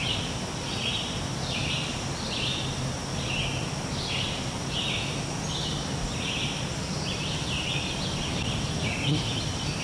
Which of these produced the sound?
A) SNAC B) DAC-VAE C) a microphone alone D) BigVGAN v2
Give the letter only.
D